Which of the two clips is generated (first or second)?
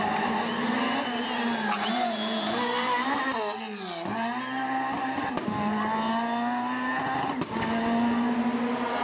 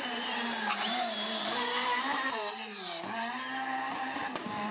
second